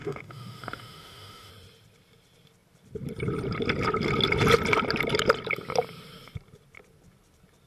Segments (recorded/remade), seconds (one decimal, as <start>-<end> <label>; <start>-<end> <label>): 0.0-1.5 remade; 1.5-7.7 recorded